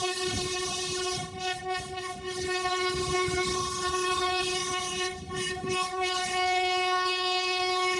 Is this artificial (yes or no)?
yes